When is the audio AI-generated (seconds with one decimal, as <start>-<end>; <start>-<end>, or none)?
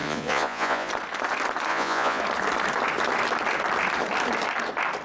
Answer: 0.0-0.9; 1.7-2.2